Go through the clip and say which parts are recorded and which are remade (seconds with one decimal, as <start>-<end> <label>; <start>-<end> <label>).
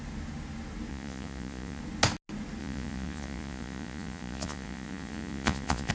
0.0-0.9 recorded; 0.9-1.8 remade; 1.8-2.6 recorded; 2.6-5.9 remade